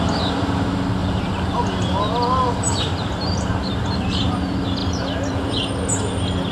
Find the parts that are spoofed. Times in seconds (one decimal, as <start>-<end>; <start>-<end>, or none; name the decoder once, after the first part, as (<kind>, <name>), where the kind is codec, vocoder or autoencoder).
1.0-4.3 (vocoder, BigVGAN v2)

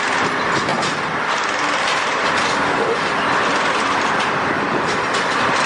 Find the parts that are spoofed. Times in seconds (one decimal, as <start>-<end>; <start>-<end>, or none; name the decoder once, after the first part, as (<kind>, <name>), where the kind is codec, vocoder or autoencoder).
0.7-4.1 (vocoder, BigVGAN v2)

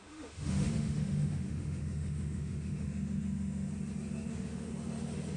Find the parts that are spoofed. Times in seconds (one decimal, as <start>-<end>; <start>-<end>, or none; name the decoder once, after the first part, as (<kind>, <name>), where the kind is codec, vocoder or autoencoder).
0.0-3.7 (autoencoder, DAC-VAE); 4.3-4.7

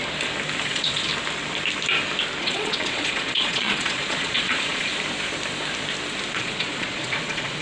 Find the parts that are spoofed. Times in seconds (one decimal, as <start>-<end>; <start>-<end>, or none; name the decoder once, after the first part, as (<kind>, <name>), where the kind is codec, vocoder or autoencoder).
0.6-1.1 (vocoder, Vocos); 2.4-4.9; 6.3-7.6

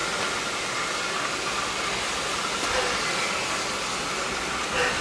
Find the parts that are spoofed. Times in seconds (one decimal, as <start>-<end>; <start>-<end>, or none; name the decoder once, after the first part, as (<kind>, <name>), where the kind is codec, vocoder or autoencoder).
none

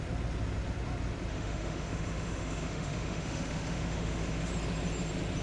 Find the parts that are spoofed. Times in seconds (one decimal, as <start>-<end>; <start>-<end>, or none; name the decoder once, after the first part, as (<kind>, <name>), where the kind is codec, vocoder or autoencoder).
1.3-4.5 (autoencoder, DAC-VAE)